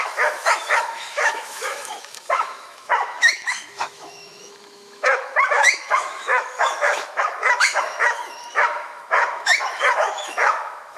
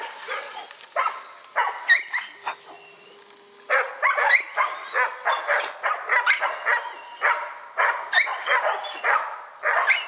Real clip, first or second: second